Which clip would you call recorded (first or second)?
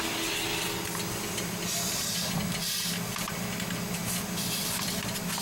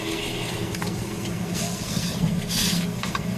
first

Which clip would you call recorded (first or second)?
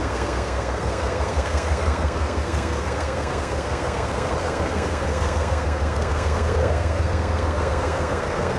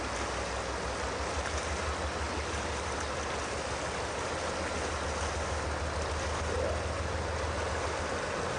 second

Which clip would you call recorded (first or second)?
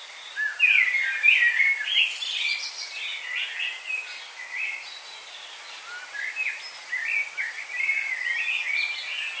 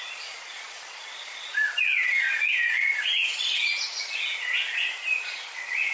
first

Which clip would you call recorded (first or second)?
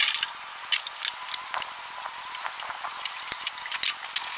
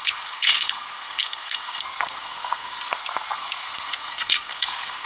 first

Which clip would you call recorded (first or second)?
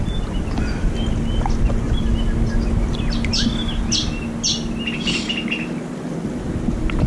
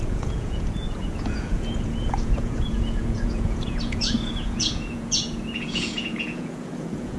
first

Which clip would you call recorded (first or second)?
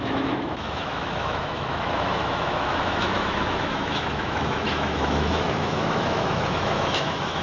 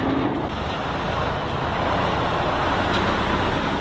second